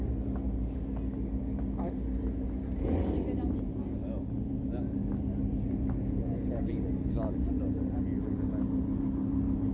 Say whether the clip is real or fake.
real